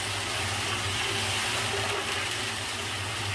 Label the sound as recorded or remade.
recorded